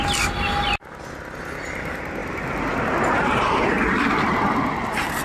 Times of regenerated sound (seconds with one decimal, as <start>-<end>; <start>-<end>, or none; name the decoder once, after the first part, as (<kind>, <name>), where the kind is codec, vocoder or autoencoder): 2.2-4.1 (vocoder, BigVGAN v2)